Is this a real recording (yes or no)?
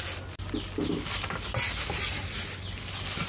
yes